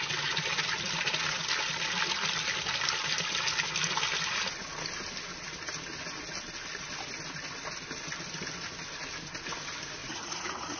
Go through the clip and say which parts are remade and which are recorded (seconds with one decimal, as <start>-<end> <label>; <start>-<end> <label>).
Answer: 0.0-10.0 recorded; 10.0-10.8 remade